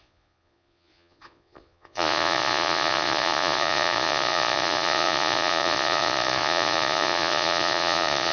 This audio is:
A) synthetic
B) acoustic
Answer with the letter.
A